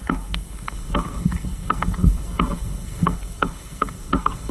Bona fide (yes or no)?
no